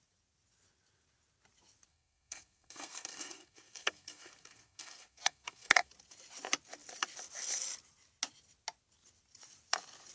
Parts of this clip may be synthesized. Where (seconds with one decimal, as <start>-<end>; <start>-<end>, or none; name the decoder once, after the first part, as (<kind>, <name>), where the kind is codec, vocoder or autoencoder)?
1.9-5.9 (codec, SNAC)